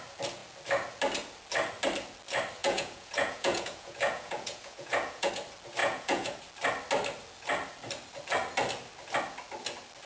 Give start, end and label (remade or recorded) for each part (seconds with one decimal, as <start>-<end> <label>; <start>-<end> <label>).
0.0-2.6 recorded; 2.6-5.3 remade; 5.3-5.8 recorded; 5.8-6.4 remade; 6.4-10.1 recorded